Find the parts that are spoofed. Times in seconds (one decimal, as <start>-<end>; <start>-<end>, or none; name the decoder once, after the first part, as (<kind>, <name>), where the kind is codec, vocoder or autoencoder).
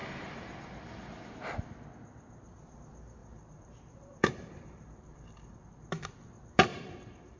0.0-1.3 (vocoder, BigVGAN v2); 3.2-5.7; 6.7-7.4